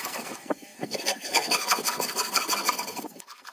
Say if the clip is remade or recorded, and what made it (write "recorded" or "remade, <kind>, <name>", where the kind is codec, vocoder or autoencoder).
remade, codec, SNAC